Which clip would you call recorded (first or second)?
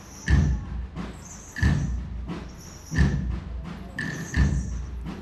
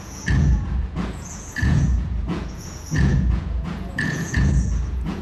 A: first